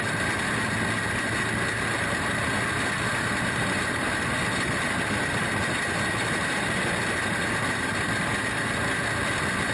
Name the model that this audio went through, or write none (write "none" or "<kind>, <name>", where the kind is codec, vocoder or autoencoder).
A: none